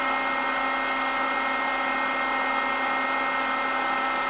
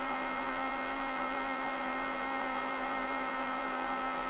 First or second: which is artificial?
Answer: second